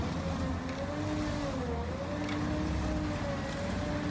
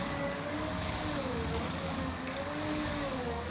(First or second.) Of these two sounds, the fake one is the second